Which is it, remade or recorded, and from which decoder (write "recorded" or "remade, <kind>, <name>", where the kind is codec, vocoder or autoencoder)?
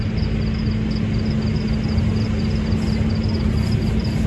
recorded